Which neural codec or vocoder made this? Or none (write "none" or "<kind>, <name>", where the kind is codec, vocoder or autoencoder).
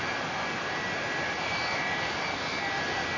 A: none